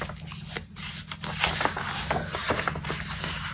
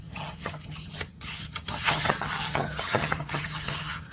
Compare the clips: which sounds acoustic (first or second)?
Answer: first